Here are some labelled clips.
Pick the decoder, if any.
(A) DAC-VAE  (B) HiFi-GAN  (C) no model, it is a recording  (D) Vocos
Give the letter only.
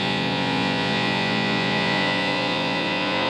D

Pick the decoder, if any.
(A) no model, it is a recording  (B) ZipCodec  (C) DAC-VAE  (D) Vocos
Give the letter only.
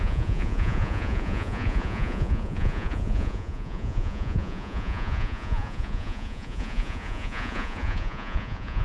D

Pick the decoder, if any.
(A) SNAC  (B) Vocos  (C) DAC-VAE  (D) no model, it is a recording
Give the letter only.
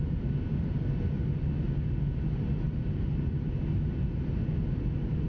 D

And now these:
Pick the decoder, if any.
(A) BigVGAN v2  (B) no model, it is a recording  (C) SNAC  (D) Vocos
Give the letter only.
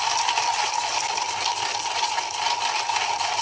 B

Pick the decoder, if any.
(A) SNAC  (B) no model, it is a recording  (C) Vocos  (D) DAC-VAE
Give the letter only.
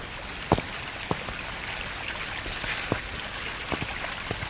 B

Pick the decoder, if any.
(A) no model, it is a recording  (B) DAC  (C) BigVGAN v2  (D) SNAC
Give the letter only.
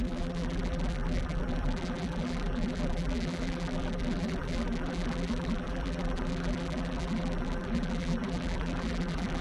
C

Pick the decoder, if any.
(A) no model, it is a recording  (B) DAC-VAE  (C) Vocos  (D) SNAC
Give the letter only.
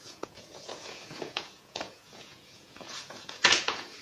C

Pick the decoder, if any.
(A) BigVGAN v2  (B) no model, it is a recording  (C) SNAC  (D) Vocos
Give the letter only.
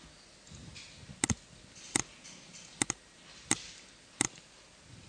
B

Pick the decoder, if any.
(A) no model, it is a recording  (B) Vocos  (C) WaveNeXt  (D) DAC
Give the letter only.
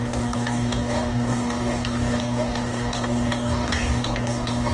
D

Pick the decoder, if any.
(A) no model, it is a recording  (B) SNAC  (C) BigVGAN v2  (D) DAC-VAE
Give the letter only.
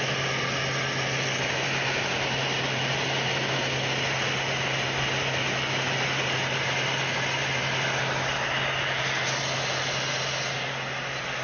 A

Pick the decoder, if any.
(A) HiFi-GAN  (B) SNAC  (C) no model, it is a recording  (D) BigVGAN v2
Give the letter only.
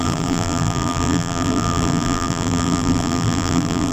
D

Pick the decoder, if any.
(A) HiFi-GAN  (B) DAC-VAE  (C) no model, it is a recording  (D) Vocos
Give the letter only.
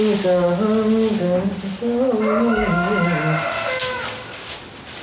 C